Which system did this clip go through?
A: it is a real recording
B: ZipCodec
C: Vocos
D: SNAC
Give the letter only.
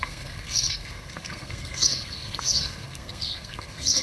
D